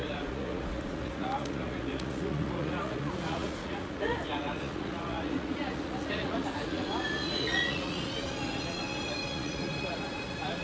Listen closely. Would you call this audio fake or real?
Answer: fake